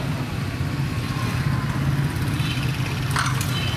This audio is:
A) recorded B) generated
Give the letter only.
A